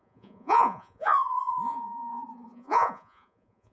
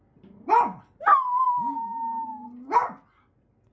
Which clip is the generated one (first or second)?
first